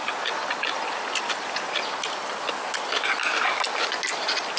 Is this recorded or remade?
recorded